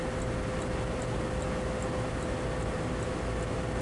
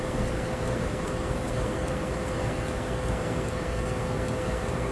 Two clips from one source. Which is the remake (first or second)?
second